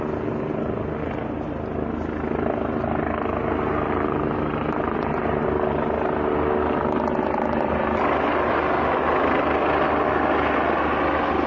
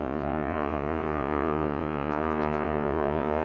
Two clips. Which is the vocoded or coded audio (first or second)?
second